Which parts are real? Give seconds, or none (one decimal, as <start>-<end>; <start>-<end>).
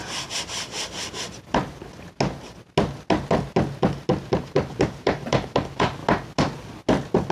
0.0-4.4; 6.0-7.3